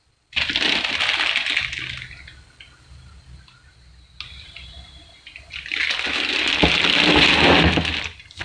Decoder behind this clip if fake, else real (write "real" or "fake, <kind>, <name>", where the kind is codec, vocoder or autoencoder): real